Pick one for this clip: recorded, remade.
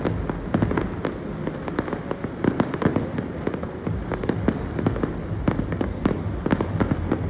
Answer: recorded